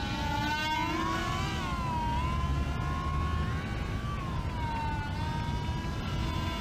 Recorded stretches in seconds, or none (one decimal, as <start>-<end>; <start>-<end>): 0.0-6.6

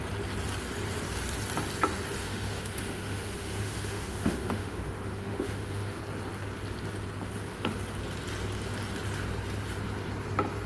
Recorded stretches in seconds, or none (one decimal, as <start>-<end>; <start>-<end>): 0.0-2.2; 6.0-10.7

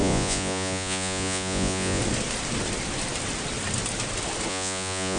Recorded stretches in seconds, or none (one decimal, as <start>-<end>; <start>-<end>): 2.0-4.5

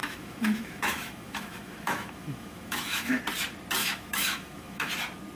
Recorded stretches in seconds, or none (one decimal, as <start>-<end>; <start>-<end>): 3.2-3.8; 4.9-5.4

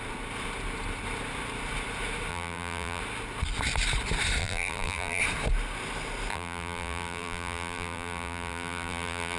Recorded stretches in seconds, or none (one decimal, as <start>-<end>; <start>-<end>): 0.0-2.3; 3.0-4.4; 5.2-6.3

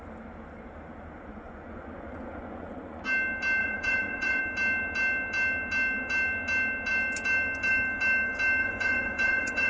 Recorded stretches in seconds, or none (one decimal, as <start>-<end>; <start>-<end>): 0.0-1.3; 3.0-3.6; 4.4-8.6